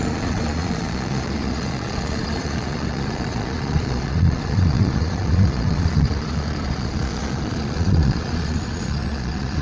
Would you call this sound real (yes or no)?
no